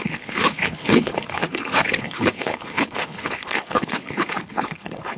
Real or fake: fake